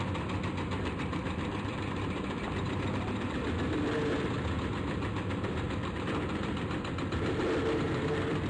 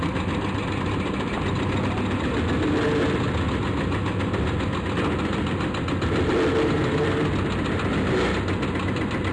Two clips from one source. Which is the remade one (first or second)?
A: first